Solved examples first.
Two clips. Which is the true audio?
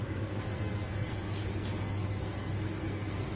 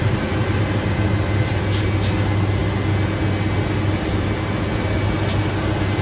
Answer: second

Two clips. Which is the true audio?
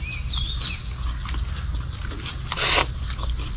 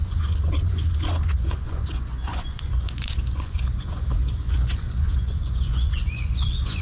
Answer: first